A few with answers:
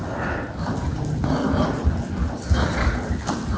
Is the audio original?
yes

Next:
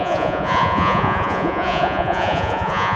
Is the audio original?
no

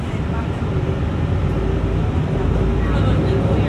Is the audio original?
yes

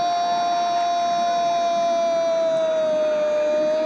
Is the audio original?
yes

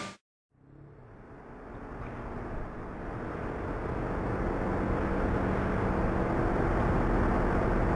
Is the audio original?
yes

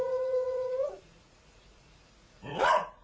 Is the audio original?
no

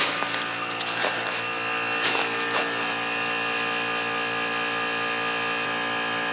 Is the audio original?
yes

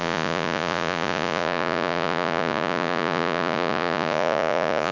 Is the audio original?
no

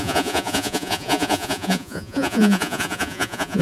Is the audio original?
no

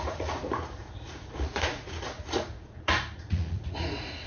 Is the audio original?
no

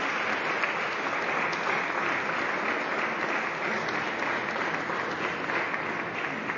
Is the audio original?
yes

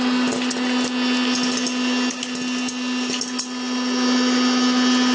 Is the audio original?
yes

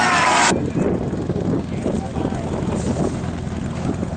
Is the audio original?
yes